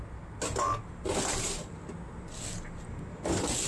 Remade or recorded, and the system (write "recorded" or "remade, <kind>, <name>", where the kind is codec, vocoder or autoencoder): recorded